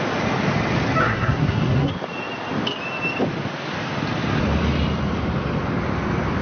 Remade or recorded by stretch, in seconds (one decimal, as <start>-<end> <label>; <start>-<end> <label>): 0.0-1.0 recorded; 1.0-1.9 remade; 1.9-6.4 recorded